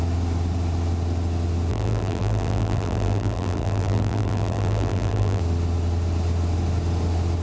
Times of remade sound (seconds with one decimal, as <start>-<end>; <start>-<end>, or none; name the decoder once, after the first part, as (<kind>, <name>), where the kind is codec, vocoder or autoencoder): 1.7-5.4 (vocoder, BigVGAN v2)